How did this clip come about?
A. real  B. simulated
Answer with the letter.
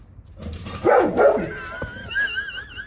A